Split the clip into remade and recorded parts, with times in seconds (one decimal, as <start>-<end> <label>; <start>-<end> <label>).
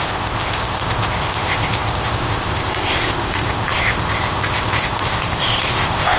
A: 0.0-6.2 remade